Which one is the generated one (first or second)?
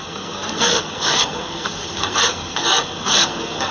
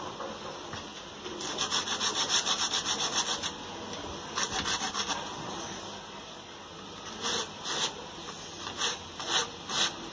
first